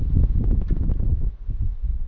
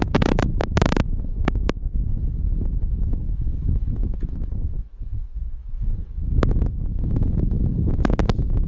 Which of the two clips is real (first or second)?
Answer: first